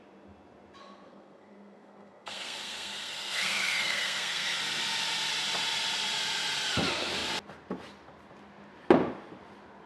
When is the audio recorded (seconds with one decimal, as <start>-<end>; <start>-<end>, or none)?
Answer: 0.0-0.8; 4.6-9.9